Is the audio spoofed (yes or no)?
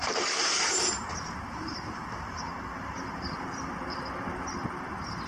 yes